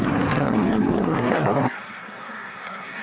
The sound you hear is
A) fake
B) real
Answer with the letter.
A